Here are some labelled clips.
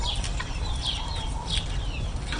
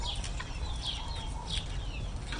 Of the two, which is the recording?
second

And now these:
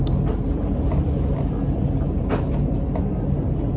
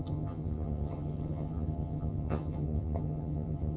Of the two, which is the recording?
first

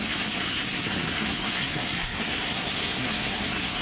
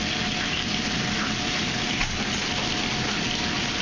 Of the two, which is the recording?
second